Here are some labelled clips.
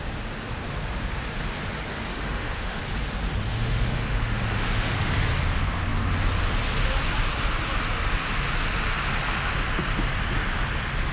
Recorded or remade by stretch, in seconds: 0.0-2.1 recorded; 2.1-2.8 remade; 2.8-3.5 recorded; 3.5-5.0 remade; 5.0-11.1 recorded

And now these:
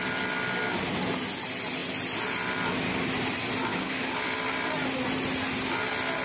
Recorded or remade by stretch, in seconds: 0.0-3.7 recorded; 3.7-4.2 remade; 4.2-6.2 recorded

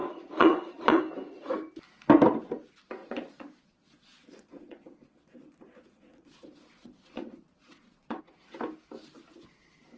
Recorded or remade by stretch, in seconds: 0.0-1.0 remade; 1.0-3.0 recorded; 3.0-8.2 remade; 8.2-10.0 recorded

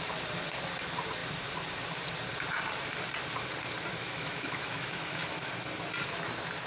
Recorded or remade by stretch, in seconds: 0.0-4.0 recorded; 4.0-5.5 remade; 5.5-6.7 recorded

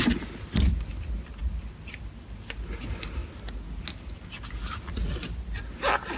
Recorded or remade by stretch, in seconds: 0.0-6.2 recorded

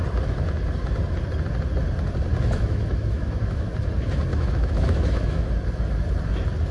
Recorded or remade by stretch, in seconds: 0.0-2.3 recorded; 2.3-3.7 remade; 3.7-4.3 recorded; 4.3-5.5 remade; 5.5-6.7 recorded

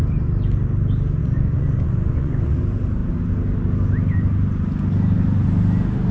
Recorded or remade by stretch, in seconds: 0.0-1.2 recorded; 1.2-2.6 remade; 2.6-6.1 recorded

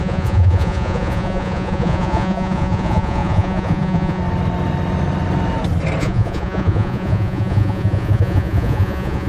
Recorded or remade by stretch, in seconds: 0.0-4.2 remade; 4.2-6.0 recorded; 6.0-9.3 remade